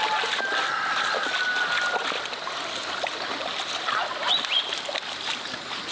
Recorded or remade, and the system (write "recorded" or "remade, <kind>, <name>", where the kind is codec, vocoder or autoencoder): recorded